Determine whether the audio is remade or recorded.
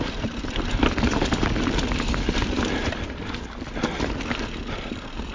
remade